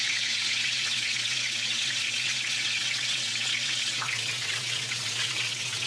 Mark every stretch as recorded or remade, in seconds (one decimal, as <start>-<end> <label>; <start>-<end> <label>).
0.0-5.9 remade